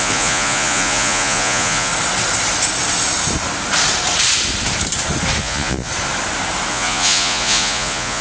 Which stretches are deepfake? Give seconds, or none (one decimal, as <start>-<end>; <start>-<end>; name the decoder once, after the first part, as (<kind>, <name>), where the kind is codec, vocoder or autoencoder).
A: 0.0-1.9 (vocoder, Vocos); 5.4-5.9; 6.7-8.2